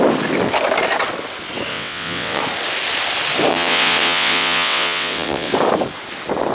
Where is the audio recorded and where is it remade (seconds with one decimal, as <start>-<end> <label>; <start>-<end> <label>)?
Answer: 0.0-1.7 recorded; 1.7-2.4 remade; 2.4-3.5 recorded; 3.5-5.5 remade; 5.5-6.5 recorded